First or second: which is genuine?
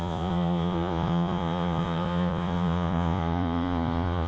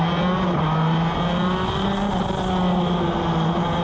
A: second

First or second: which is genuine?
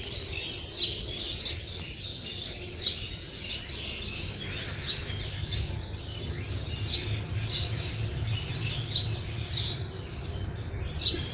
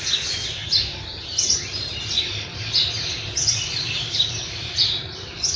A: first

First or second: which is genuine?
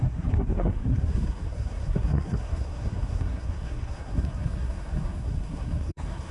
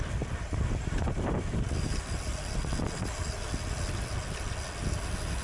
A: second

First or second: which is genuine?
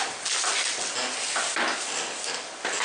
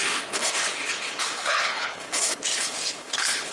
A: first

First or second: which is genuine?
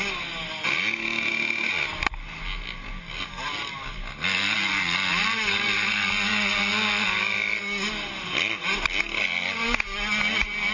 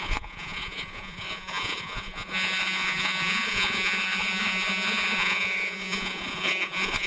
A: first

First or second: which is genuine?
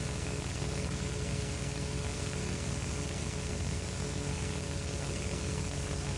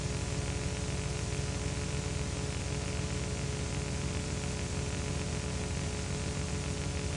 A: second